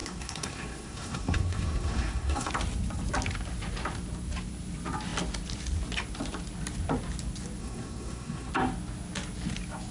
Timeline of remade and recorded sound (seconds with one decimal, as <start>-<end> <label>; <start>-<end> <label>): 0.0-2.5 remade; 2.5-7.6 recorded; 7.6-8.5 remade; 8.5-9.9 recorded